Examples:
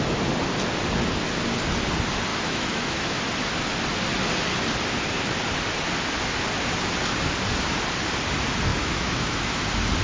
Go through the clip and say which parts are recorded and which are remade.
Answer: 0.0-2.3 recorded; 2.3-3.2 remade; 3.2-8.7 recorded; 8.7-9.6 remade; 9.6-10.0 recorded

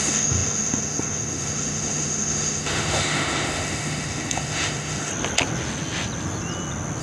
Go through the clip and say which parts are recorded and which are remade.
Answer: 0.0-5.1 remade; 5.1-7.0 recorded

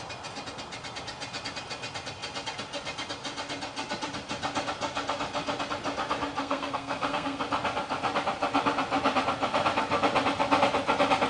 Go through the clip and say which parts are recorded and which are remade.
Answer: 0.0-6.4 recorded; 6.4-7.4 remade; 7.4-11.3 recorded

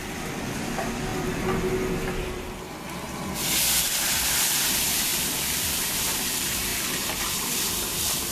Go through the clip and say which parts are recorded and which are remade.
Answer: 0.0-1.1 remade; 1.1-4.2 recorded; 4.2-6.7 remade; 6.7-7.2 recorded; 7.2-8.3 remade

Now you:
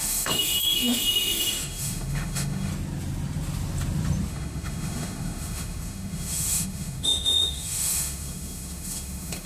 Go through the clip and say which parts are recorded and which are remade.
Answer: 0.0-2.7 remade; 2.7-4.3 recorded; 4.3-9.5 remade

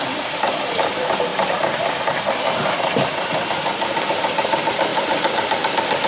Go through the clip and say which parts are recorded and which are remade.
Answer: 0.0-1.3 remade; 1.3-4.1 recorded; 4.1-6.1 remade